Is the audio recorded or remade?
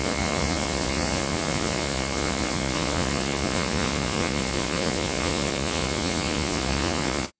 remade